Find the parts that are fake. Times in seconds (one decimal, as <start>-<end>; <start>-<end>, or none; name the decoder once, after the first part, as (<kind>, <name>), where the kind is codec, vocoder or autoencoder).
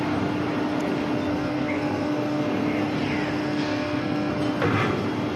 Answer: 1.3-2.8 (codec, SNAC); 3.4-4.3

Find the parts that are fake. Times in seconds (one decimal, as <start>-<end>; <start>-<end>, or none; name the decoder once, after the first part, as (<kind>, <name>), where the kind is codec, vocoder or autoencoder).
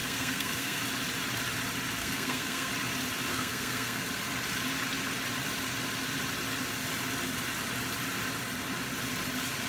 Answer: 0.0-0.8 (codec, SNAC); 2.0-2.7; 3.3-4.0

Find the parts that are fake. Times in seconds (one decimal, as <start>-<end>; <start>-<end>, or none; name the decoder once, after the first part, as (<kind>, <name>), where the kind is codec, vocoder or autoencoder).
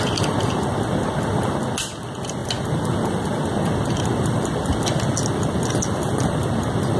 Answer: none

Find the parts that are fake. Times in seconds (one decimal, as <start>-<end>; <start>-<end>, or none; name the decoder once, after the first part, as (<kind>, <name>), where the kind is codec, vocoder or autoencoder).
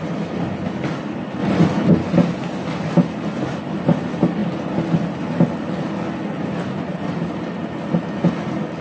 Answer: 6.9-7.6 (vocoder, BigVGAN v2)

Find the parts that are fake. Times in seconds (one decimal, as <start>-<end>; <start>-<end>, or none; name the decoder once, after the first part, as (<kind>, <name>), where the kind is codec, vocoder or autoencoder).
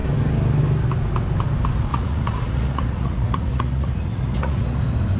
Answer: 1.9-4.8 (vocoder, Vocos)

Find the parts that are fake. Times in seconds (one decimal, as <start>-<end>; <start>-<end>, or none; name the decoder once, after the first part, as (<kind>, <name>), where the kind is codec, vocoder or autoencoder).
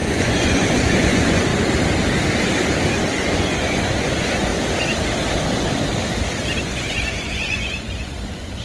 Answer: 0.0-1.5 (vocoder, Vocos); 3.1-4.5; 6.6-8.6